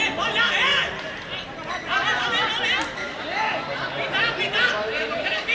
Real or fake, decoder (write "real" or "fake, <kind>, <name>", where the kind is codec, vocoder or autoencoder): real